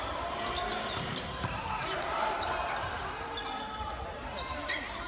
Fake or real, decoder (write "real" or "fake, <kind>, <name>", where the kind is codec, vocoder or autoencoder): fake, vocoder, BigVGAN v2